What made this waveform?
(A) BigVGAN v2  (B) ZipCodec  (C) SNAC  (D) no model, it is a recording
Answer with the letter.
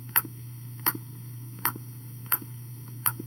C